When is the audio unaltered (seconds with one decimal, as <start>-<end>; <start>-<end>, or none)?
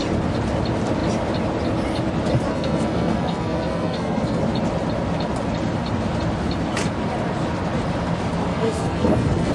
0.0-2.5; 4.4-8.5